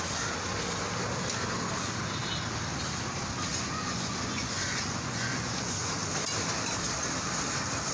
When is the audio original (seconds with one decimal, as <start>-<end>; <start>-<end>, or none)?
0.0-3.5; 5.9-7.9